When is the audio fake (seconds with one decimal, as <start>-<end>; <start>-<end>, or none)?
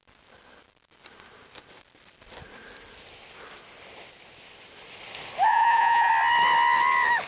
5.5-6.1